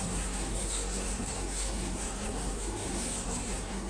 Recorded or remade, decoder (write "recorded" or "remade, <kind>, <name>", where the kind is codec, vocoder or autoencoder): remade, codec, SNAC